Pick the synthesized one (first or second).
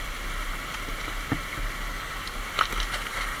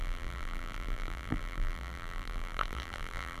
second